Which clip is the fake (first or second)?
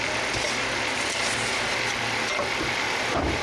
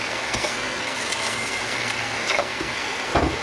second